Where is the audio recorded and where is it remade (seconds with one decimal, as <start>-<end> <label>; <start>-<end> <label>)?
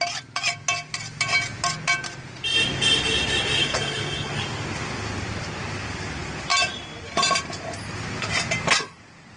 0.0-3.6 recorded; 3.6-4.3 remade; 4.3-9.4 recorded